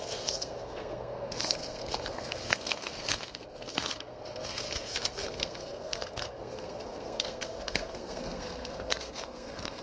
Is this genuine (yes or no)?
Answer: no